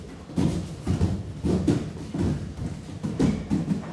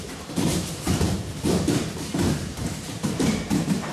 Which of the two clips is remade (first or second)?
second